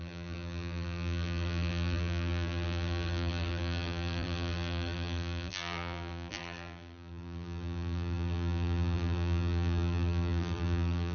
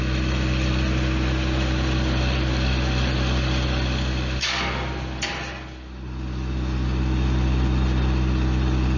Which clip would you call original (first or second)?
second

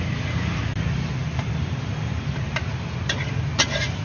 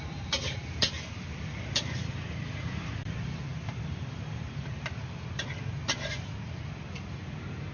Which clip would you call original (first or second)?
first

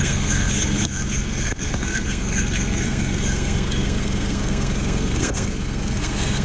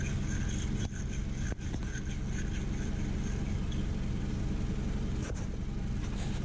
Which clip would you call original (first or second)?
second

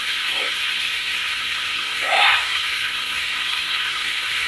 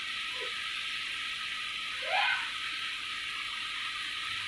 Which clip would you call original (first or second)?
second